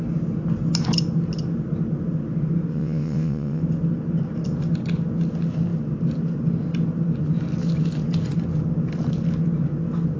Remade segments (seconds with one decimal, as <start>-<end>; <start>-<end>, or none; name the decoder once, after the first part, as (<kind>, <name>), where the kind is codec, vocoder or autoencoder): 2.7-3.6 (vocoder, WaveNeXt)

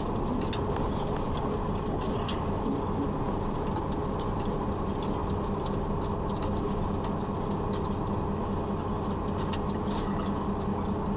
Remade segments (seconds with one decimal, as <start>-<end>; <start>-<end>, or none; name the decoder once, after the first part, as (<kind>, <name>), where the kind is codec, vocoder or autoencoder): none

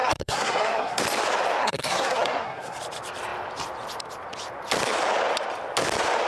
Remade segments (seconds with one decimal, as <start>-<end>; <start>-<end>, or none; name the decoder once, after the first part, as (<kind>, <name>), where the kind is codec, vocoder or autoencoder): 0.0-1.0 (codec, SNAC); 1.6-2.8